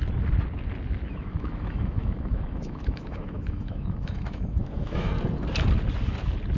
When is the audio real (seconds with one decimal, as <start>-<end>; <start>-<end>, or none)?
0.0-1.1; 5.1-6.6